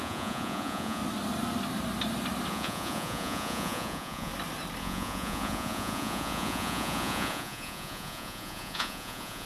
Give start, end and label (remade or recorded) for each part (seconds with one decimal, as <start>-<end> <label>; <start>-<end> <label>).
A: 0.0-1.0 remade; 1.0-2.5 recorded; 2.5-4.3 remade; 4.3-4.8 recorded; 4.8-9.5 remade